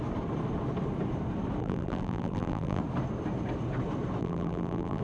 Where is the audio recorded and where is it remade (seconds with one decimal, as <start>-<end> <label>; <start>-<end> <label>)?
0.0-1.6 recorded; 1.6-2.8 remade; 2.8-4.2 recorded; 4.2-5.0 remade

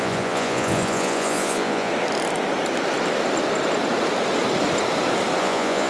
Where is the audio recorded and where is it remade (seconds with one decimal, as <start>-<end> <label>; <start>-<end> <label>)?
0.0-1.9 remade; 1.9-5.4 recorded; 5.4-5.9 remade

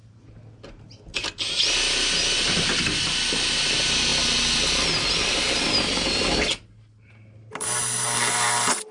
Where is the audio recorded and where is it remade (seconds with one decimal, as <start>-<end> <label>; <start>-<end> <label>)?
0.0-8.9 recorded

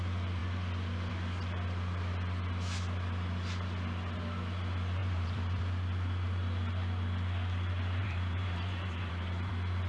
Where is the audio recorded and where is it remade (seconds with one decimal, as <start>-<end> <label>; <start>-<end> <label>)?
0.0-5.0 recorded; 5.0-5.6 remade; 5.6-8.0 recorded; 8.0-9.5 remade; 9.5-9.9 recorded

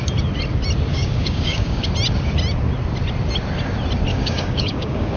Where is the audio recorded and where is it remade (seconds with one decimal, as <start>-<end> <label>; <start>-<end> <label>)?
0.0-0.9 recorded; 0.9-1.8 remade; 1.8-4.1 recorded; 4.1-5.2 remade